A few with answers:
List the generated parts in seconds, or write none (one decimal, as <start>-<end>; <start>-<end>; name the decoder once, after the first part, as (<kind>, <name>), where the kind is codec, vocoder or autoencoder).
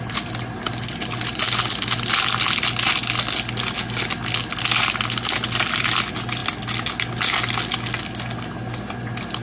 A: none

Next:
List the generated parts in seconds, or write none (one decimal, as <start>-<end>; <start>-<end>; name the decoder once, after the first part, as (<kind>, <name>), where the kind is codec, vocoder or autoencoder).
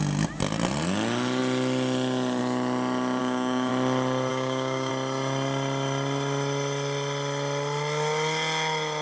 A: 3.2-3.7 (codec, DAC); 4.3-4.9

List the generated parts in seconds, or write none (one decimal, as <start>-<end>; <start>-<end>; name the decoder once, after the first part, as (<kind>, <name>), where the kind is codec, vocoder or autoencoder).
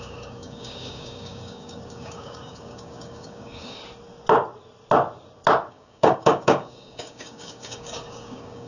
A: 0.0-3.8 (codec, DAC); 5.7-8.7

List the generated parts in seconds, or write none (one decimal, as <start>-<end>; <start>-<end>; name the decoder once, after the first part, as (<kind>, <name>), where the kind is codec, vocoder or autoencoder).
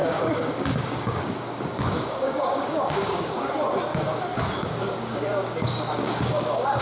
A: 0.0-3.5 (codec, DAC); 3.9-6.8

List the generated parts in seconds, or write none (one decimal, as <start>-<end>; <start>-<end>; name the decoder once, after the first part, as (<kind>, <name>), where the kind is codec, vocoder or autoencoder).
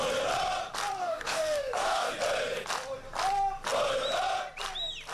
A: 1.0-2.1 (codec, DAC)